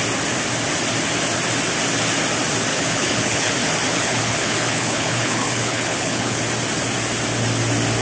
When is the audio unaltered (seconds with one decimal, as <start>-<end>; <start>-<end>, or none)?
0.0-2.7; 3.5-3.9; 6.4-8.0